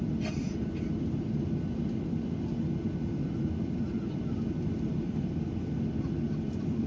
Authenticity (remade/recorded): recorded